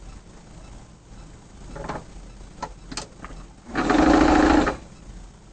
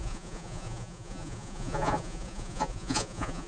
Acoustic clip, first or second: first